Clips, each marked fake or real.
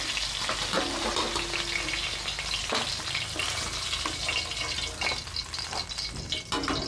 real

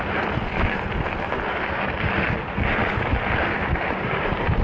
real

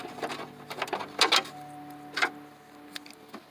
real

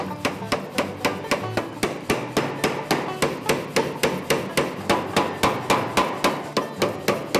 real